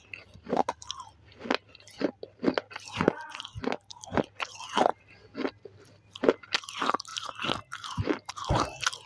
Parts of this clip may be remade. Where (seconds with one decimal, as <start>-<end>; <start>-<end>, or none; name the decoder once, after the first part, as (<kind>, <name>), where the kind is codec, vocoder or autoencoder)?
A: none